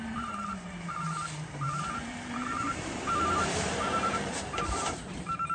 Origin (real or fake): fake